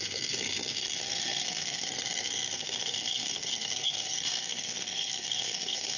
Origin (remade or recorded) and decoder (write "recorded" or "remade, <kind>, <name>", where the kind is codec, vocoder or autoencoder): remade, codec, SNAC